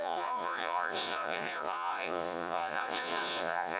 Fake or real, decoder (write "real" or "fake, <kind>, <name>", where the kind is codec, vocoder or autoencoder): fake, vocoder, Vocos